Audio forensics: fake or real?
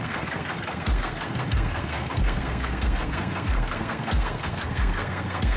fake